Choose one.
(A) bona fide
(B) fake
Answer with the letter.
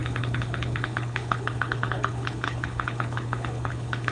B